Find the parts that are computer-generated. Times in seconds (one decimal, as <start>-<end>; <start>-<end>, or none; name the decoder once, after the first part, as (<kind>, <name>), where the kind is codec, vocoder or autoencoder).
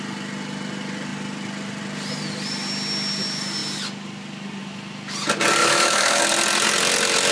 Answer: 5.6-6.2 (autoencoder, DAC-VAE)